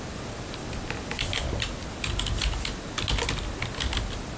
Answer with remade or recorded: recorded